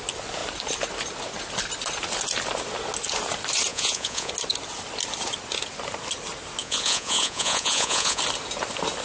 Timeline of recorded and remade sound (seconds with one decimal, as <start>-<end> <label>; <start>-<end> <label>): 0.0-3.7 recorded; 3.7-4.3 remade; 4.3-6.6 recorded; 6.6-8.2 remade; 8.2-9.0 recorded